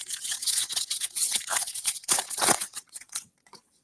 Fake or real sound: fake